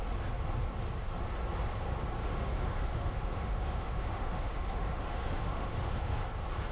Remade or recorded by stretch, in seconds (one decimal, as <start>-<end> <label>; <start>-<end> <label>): 0.0-2.2 recorded; 2.2-6.2 remade; 6.2-6.7 recorded